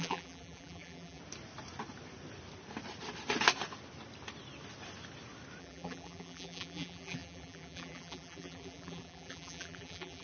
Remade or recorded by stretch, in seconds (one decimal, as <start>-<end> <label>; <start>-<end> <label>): 0.0-1.2 remade; 1.2-5.6 recorded; 5.6-10.2 remade

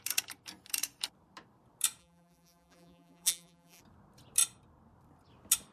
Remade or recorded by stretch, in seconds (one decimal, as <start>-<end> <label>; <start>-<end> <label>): 0.0-2.0 recorded; 2.0-3.8 remade; 3.8-5.7 recorded

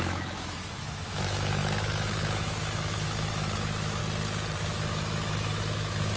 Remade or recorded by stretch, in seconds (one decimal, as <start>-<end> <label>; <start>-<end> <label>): 0.0-4.0 remade; 4.0-4.6 recorded; 4.6-6.2 remade

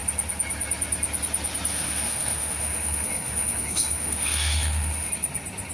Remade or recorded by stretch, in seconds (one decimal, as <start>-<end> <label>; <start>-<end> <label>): 0.0-1.7 recorded; 1.7-5.1 remade; 5.1-5.7 recorded

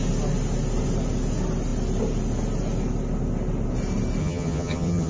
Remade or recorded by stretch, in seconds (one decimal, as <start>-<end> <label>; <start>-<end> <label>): 0.0-4.2 recorded; 4.2-5.1 remade

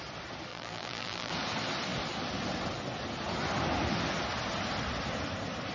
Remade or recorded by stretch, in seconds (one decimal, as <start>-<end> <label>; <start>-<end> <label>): 0.0-0.5 recorded; 0.5-1.3 remade; 1.3-5.7 recorded

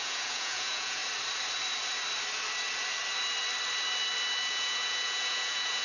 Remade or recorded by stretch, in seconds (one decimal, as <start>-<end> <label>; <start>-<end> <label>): 0.0-1.0 remade; 1.0-4.5 recorded; 4.5-5.8 remade